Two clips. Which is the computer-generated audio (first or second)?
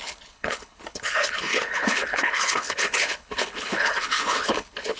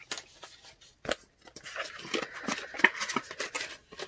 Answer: first